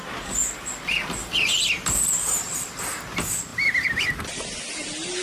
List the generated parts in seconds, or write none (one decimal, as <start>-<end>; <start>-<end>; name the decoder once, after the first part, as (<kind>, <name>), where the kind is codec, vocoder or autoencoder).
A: none